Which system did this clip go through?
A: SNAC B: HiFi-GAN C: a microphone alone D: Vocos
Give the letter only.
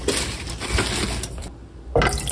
C